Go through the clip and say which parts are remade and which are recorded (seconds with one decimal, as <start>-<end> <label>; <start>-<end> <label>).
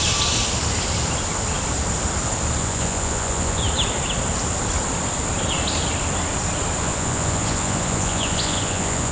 0.0-2.6 recorded; 2.6-3.6 remade; 3.6-6.8 recorded; 6.8-9.1 remade